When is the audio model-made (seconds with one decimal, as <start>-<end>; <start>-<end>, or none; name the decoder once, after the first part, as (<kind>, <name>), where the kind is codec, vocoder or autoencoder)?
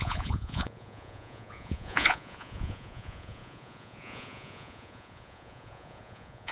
0.0-6.5 (vocoder, Vocos)